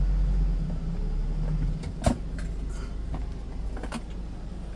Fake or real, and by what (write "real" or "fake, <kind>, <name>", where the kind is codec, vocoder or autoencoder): real